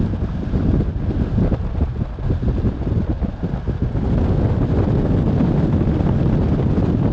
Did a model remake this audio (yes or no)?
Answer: no